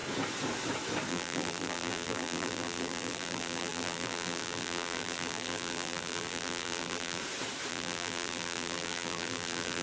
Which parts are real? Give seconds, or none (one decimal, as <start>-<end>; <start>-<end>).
0.0-1.1; 7.2-7.7